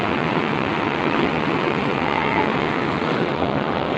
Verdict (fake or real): fake